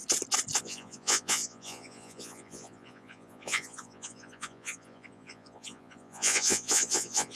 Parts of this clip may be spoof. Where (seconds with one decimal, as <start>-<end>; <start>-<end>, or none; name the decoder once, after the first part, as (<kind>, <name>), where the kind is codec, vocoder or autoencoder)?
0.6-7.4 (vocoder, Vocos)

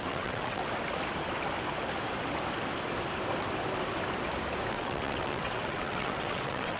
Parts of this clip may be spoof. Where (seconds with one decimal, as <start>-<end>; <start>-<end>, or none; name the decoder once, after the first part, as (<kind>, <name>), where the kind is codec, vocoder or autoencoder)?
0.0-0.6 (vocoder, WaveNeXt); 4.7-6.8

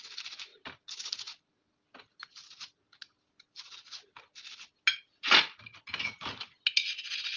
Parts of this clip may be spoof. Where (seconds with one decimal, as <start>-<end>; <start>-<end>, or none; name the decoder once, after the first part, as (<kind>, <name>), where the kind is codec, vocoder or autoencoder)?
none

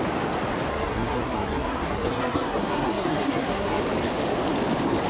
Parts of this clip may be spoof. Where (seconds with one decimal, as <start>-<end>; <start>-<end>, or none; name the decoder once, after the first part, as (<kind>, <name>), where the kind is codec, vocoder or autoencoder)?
0.7-3.8 (codec, SNAC)

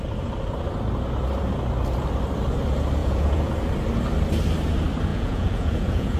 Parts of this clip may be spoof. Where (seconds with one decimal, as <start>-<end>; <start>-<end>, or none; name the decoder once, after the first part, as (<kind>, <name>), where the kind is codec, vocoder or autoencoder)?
3.0-3.5 (vocoder, Vocos); 5.1-6.2

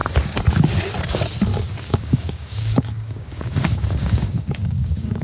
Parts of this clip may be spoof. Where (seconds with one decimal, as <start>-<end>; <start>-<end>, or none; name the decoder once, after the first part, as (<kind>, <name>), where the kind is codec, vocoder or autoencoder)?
1.8-5.2 (codec, DAC)

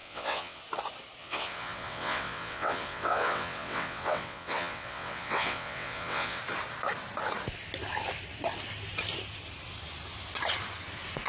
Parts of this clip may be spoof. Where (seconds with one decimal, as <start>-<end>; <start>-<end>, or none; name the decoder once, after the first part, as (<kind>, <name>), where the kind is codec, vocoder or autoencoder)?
0.0-0.6 (vocoder, WaveNeXt); 1.2-6.4

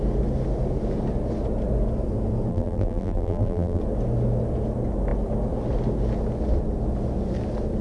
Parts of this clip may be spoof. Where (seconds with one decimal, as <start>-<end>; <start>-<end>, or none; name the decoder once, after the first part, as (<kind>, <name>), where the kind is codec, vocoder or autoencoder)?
2.5-3.8 (vocoder, BigVGAN v2)